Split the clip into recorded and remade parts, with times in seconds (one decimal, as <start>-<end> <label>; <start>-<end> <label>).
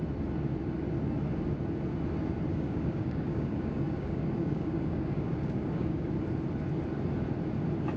0.0-2.5 recorded; 2.5-6.1 remade; 6.1-8.0 recorded